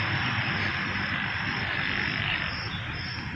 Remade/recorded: remade